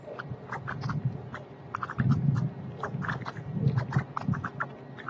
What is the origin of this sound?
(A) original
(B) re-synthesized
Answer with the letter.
A